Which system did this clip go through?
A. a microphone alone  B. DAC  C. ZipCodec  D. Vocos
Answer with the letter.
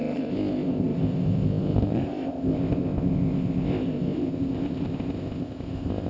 C